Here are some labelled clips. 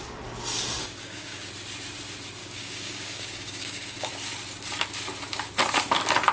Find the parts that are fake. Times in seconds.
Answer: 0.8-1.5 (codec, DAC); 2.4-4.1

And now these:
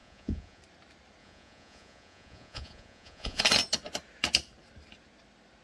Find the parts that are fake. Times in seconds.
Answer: 0.0-0.6 (vocoder, Vocos); 1.2-3.4

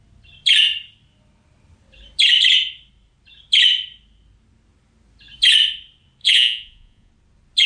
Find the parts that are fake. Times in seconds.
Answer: 6.2-7.1 (vocoder, Vocos)

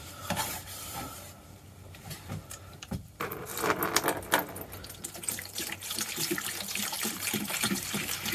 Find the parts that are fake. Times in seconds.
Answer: 0.0-3.5 (vocoder, BigVGAN v2); 4.8-8.3

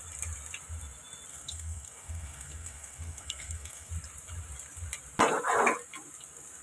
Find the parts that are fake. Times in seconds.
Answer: 1.3-3.9 (codec, SNAC)